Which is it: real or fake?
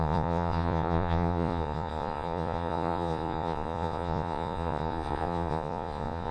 fake